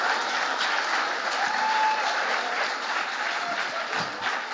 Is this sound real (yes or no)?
yes